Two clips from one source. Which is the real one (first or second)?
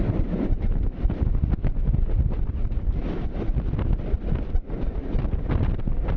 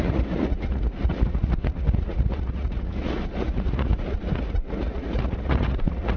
first